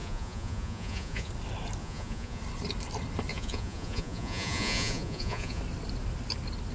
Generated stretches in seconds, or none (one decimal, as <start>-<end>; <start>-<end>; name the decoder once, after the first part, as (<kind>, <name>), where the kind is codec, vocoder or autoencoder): 0.0-1.3 (vocoder, Vocos); 1.8-2.4; 3.3-5.6